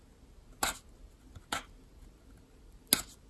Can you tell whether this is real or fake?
real